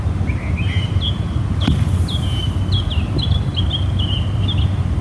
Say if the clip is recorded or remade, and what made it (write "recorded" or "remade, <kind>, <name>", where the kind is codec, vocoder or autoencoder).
recorded